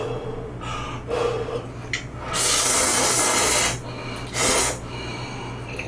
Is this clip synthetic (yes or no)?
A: no